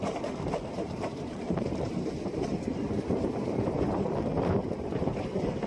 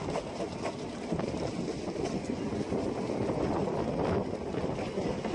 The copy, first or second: first